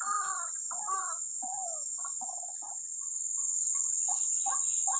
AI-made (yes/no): no